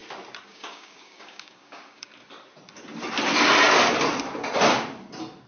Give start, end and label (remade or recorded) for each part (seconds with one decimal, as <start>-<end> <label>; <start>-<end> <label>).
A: 0.0-0.5 recorded; 0.5-2.1 remade; 2.1-5.5 recorded